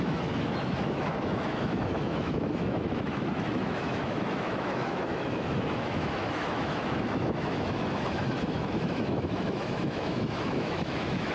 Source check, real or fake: fake